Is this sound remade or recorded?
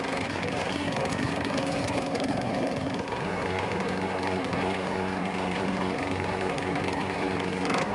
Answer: remade